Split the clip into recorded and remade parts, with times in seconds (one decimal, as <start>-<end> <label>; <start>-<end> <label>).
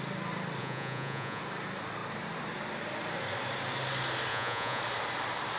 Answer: 0.0-0.6 recorded; 0.6-1.4 remade; 1.4-4.3 recorded; 4.3-4.8 remade; 4.8-5.6 recorded